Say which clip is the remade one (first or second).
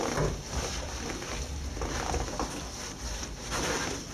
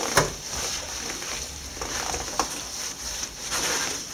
second